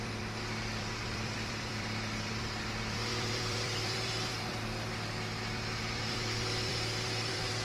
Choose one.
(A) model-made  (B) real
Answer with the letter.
A